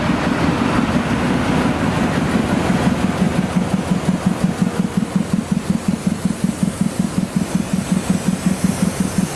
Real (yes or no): yes